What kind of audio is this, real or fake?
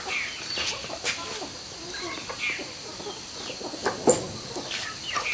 real